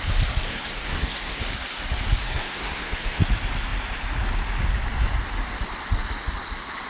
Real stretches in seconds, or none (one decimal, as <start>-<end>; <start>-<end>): 0.0-0.5; 1.4-2.2; 3.2-6.9